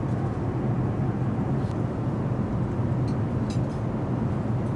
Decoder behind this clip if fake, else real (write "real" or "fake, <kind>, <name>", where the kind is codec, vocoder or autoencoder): real